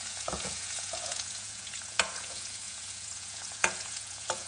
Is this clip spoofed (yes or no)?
yes